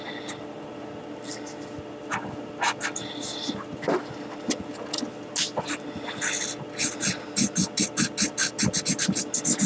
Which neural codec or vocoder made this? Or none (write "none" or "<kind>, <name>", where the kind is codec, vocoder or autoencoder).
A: none